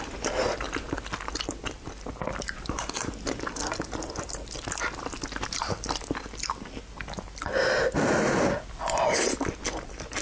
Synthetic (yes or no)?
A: no